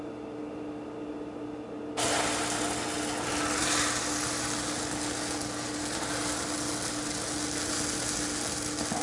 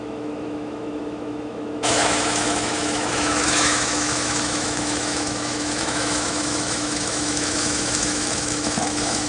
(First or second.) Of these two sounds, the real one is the first